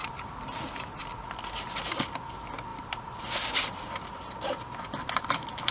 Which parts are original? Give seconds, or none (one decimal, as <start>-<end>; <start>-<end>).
1.0-2.7; 4.1-5.7